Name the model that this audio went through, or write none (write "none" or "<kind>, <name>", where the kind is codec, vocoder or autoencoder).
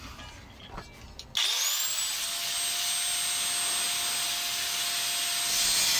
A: none